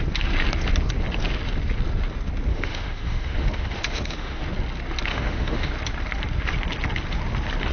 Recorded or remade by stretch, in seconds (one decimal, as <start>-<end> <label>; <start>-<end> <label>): 0.0-2.5 recorded; 2.5-4.4 remade; 4.4-5.1 recorded; 5.1-5.7 remade; 5.7-7.7 recorded